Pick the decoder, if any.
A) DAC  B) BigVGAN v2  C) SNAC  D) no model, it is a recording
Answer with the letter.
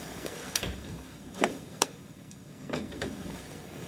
C